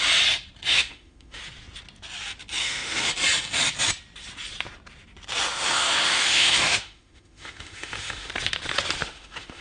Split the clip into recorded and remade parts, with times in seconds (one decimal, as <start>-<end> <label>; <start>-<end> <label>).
0.0-0.7 recorded; 0.7-1.4 remade; 1.4-2.6 recorded; 2.6-3.1 remade; 3.1-5.5 recorded; 5.5-8.3 remade; 8.3-9.0 recorded; 9.0-9.6 remade